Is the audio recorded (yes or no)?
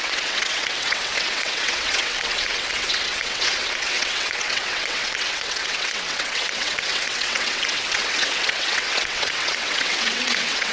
no